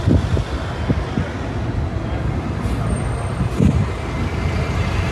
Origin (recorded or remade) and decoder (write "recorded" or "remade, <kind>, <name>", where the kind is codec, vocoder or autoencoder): recorded